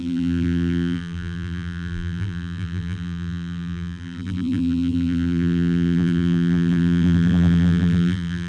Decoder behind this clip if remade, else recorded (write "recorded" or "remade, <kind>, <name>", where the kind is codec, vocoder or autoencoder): remade, vocoder, BigVGAN v2